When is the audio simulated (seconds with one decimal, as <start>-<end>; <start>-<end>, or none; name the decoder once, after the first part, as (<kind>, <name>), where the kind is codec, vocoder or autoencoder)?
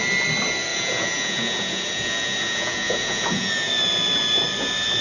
0.7-3.7 (vocoder, Vocos)